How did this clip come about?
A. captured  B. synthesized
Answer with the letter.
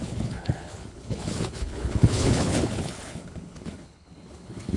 B